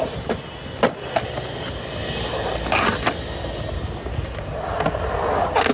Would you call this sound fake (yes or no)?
no